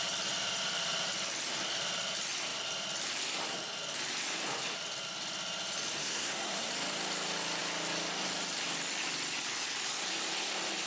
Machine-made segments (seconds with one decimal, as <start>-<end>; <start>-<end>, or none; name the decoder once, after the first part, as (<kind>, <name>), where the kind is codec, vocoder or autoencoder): 6.0-6.7 (codec, SNAC)